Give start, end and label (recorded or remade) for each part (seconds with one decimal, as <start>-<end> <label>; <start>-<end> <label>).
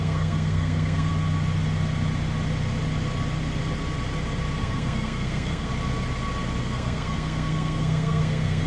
0.0-1.1 remade; 1.1-4.6 recorded; 4.6-5.7 remade; 5.7-6.6 recorded; 6.6-8.7 remade